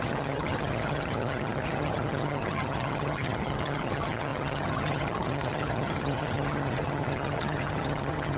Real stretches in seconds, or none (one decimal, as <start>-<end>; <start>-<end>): none